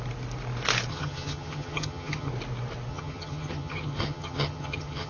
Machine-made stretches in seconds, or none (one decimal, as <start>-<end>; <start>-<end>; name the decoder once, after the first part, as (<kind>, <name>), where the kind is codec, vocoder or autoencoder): 0.9-2.3 (vocoder, HiFi-GAN); 2.9-5.1